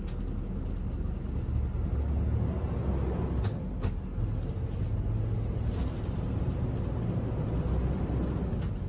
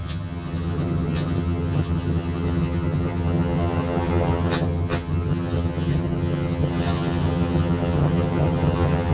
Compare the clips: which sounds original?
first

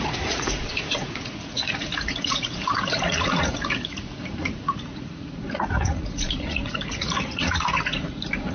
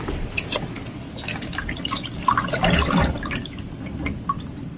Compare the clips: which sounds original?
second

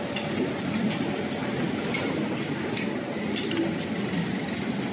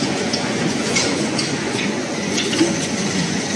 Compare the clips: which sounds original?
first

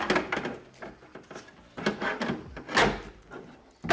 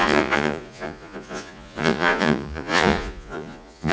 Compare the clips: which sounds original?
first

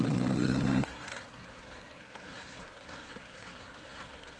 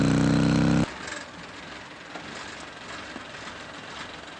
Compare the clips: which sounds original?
second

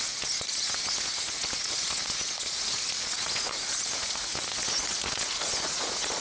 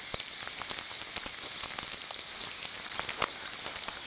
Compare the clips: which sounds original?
second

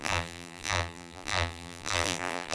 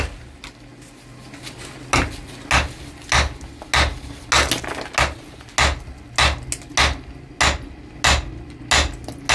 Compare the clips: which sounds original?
second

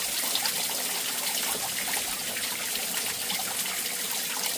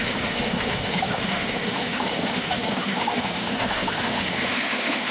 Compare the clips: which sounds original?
first